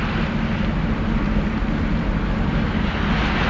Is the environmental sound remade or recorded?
recorded